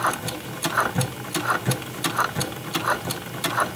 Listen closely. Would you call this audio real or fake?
real